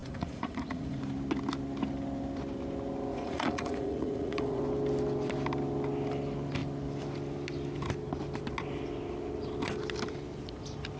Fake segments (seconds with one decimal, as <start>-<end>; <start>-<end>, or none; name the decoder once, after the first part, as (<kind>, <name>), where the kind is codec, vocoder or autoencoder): 0.0-1.0 (vocoder, Vocos); 3.1-4.6